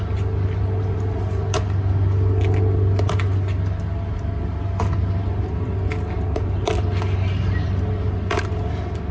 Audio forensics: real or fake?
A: real